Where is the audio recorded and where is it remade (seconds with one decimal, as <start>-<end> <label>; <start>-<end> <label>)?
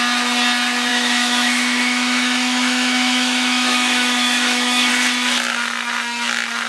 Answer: 0.0-0.9 recorded; 0.9-4.9 remade; 4.9-6.7 recorded